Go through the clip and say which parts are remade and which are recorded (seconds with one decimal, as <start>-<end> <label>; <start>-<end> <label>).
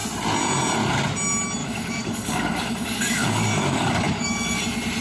0.0-1.6 recorded; 1.6-4.6 remade; 4.6-5.0 recorded